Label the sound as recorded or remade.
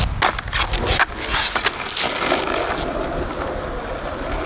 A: recorded